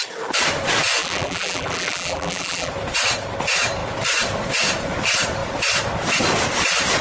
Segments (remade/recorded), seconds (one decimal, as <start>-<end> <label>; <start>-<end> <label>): 0.0-1.0 recorded; 1.0-2.7 remade; 2.7-7.0 recorded